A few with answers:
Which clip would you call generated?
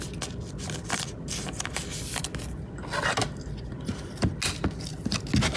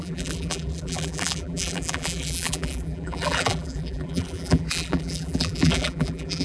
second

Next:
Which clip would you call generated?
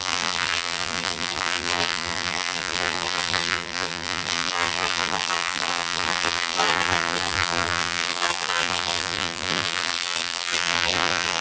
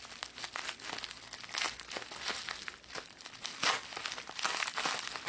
first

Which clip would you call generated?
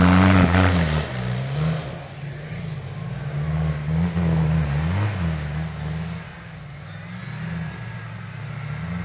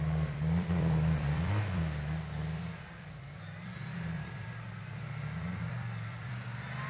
second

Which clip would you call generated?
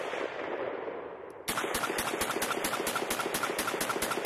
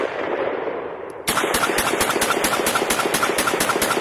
second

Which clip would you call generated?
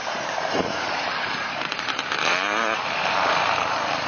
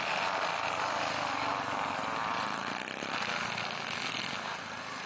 first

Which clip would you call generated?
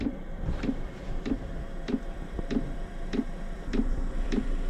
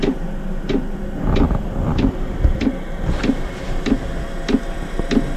first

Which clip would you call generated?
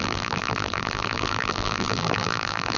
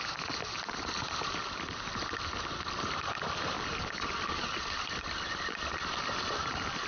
first